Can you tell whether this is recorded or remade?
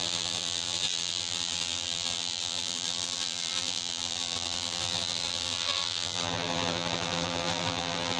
remade